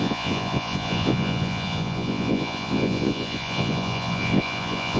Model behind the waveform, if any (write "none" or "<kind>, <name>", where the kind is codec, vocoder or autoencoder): vocoder, Vocos